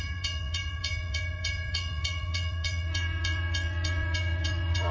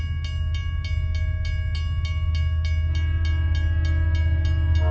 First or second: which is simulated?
first